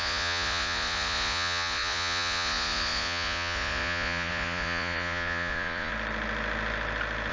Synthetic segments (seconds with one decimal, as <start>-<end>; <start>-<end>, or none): 0.0-5.9